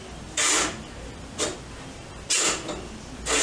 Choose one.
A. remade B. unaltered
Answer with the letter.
B